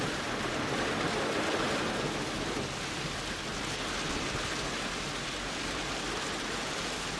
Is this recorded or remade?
recorded